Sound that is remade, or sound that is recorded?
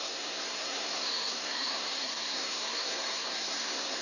remade